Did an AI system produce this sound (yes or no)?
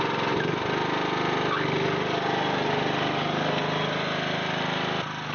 no